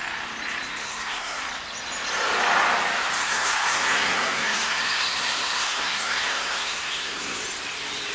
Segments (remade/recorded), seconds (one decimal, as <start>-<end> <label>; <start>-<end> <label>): 0.0-0.8 recorded; 0.8-1.4 remade; 1.4-3.2 recorded; 3.2-7.4 remade; 7.4-8.1 recorded